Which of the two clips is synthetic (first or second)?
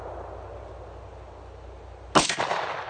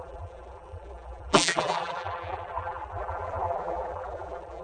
second